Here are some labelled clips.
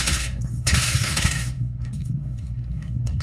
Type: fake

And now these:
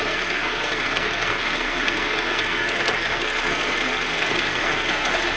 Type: fake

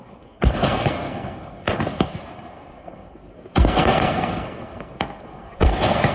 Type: fake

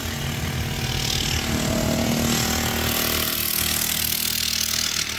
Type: real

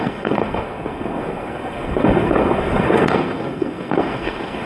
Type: fake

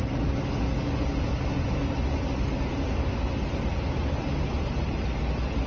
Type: real